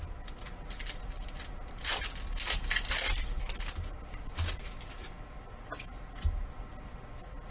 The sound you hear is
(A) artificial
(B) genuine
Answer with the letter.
B